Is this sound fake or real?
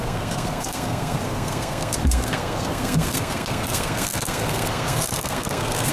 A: fake